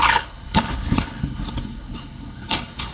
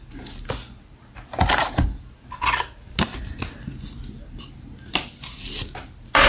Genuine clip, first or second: second